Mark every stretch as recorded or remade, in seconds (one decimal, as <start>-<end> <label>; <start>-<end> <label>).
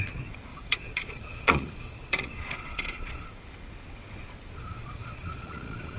0.0-0.5 recorded; 0.5-3.3 remade; 3.3-4.6 recorded; 4.6-6.0 remade